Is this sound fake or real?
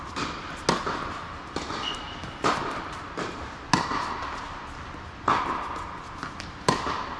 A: real